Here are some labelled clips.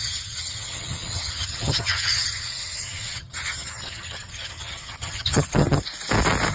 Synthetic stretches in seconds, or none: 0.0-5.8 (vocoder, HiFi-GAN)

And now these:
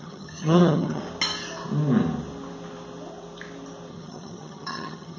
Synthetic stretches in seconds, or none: 0.0-1.0 (vocoder, HiFi-GAN); 3.9-5.2

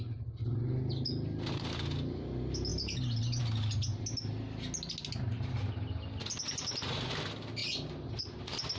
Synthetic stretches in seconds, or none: none

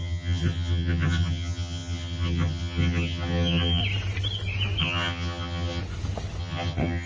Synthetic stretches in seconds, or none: 0.0-3.8 (vocoder, HiFi-GAN); 4.8-5.8; 6.4-7.1

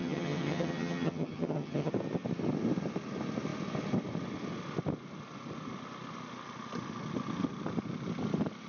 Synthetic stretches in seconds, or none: 0.0-1.9 (vocoder, HiFi-GAN)

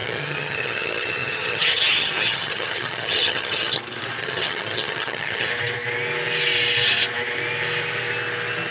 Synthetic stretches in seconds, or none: 0.0-3.8 (vocoder, HiFi-GAN); 4.2-5.5

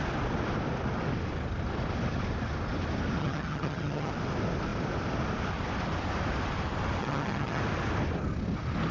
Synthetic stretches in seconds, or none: 3.2-4.1 (vocoder, HiFi-GAN); 7.0-7.6